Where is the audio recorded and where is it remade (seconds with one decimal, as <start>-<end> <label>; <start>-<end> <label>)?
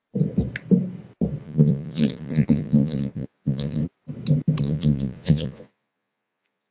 0.0-1.4 recorded; 1.4-3.8 remade; 3.8-4.6 recorded; 4.6-6.7 remade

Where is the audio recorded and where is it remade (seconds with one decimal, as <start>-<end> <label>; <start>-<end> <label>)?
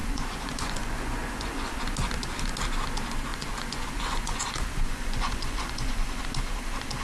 0.0-1.7 remade; 1.7-3.3 recorded; 3.3-6.2 remade; 6.2-7.0 recorded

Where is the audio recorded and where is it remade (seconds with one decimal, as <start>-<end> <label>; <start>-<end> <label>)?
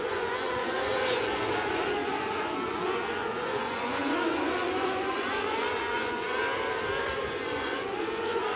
0.0-6.4 remade; 6.4-7.3 recorded; 7.3-8.6 remade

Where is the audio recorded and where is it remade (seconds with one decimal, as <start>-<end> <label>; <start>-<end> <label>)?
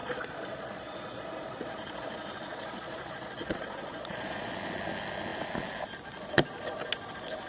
0.0-4.5 remade; 4.5-7.5 recorded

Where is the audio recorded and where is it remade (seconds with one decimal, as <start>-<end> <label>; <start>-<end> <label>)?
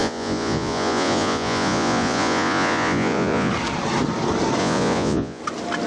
0.0-3.5 remade; 3.5-4.6 recorded; 4.6-5.4 remade; 5.4-5.9 recorded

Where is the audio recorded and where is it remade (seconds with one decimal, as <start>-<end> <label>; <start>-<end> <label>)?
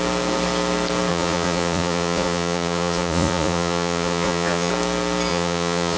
0.0-1.1 recorded; 1.1-4.7 remade; 4.7-5.3 recorded; 5.3-6.0 remade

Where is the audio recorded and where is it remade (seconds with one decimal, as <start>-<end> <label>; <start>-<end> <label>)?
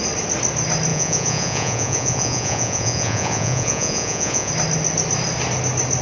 0.0-0.9 recorded; 0.9-4.5 remade; 4.5-6.0 recorded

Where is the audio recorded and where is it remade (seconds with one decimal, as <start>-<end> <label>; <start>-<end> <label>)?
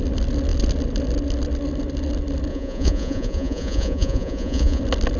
0.0-2.5 recorded; 2.5-4.8 remade; 4.8-5.2 recorded